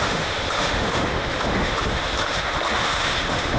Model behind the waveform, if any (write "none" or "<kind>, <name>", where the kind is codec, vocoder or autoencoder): autoencoder, DAC-VAE